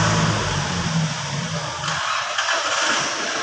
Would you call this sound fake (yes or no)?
no